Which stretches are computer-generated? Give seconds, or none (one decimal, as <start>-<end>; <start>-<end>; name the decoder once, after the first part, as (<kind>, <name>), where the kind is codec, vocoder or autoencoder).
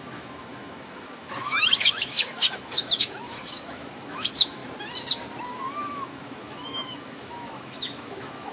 0.0-4.6 (autoencoder, DAC-VAE); 5.8-8.5